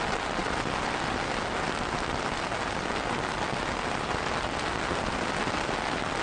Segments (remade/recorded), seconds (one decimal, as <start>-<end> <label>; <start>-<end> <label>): 0.0-6.2 recorded